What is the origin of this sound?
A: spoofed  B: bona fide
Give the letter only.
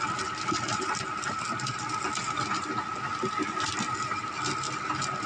B